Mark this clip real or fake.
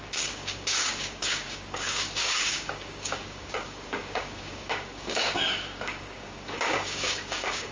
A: fake